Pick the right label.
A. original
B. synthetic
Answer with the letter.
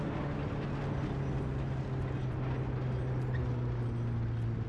A